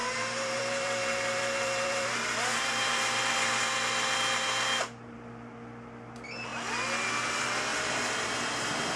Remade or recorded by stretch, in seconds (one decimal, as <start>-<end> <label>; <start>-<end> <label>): 0.0-3.6 remade; 3.6-7.7 recorded; 7.7-9.0 remade